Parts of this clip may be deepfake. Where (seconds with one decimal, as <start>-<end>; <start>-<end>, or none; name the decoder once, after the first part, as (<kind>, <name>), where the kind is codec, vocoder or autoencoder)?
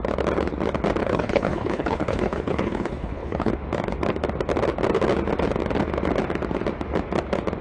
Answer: 1.0-3.5 (codec, HILCodec)